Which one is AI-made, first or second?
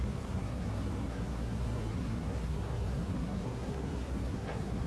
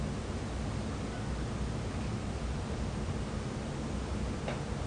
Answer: first